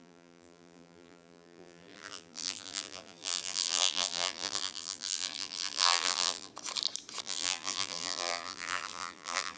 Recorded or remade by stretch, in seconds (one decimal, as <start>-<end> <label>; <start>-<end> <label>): 0.0-6.5 remade; 6.5-7.2 recorded; 7.2-9.6 remade